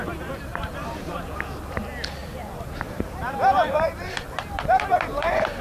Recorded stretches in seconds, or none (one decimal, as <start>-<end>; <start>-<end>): 0.0-0.5; 1.2-2.2